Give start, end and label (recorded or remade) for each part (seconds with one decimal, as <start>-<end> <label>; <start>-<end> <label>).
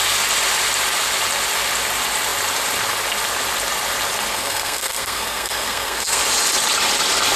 0.0-4.3 recorded; 4.3-6.2 remade; 6.2-7.4 recorded